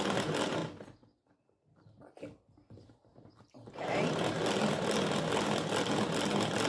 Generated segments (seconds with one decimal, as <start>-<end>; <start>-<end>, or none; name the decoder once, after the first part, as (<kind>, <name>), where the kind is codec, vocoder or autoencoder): none